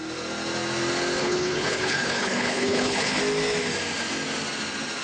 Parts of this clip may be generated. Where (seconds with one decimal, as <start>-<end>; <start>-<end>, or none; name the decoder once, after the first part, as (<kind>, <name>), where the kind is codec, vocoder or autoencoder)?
1.2-3.2 (codec, HILCodec)